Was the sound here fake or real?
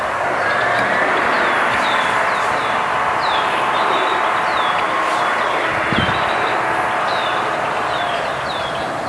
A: real